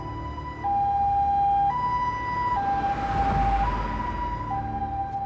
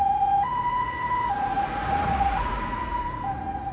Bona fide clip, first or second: first